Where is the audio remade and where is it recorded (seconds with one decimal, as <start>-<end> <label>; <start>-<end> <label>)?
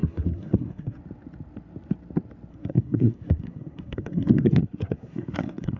0.0-1.0 remade; 1.0-2.5 recorded; 2.5-5.8 remade